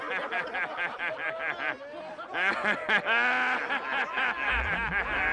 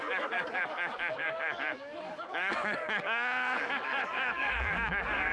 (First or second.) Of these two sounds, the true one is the first